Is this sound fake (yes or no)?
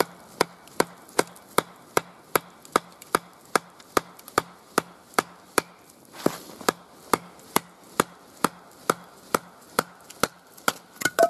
no